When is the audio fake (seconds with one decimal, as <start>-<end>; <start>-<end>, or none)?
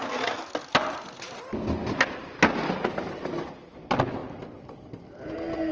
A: none